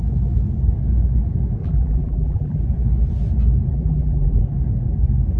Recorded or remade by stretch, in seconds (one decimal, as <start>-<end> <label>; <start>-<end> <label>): 0.0-1.6 recorded; 1.6-2.6 remade; 2.6-3.7 recorded; 3.7-4.4 remade; 4.4-5.4 recorded